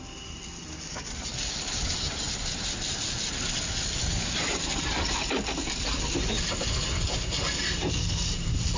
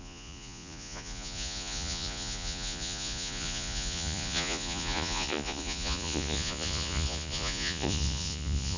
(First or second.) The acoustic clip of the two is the first